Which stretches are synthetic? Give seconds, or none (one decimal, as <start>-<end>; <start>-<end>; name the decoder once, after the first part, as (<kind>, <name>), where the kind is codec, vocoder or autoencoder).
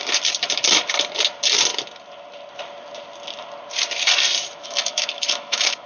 4.6-5.9 (autoencoder, DAC-VAE)